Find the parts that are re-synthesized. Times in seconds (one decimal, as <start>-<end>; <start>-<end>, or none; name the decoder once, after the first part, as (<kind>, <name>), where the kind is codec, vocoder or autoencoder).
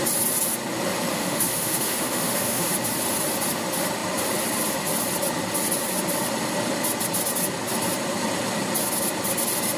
1.1-2.7 (autoencoder, DAC-VAE)